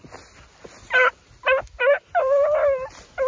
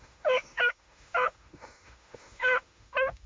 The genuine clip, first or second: first